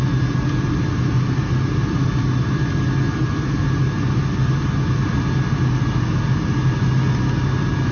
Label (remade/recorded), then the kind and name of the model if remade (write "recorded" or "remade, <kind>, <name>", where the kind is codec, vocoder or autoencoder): recorded